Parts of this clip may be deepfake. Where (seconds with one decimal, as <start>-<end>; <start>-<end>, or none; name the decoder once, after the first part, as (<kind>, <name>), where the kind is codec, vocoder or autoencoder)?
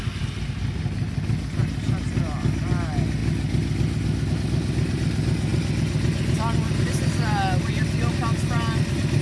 none